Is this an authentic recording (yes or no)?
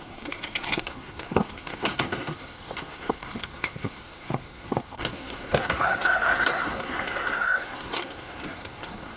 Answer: no